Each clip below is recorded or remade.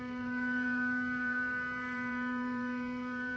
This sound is remade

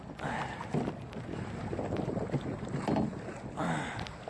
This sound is recorded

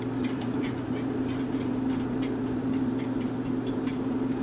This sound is remade